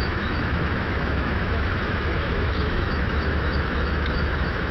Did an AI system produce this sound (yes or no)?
yes